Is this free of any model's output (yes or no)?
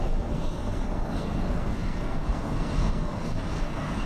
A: no